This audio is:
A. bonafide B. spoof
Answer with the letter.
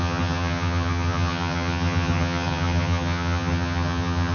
B